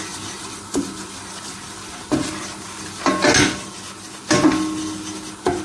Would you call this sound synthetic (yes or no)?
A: no